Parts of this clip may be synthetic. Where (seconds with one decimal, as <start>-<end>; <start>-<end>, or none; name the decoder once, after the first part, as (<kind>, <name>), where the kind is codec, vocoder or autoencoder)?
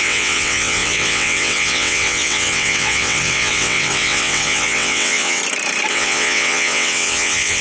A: 0.0-5.4 (vocoder, WaveNeXt); 5.9-7.6